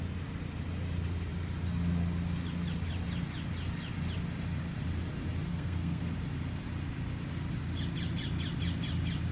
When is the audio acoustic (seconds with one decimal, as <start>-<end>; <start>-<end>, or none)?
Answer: 0.0-5.5; 6.0-9.3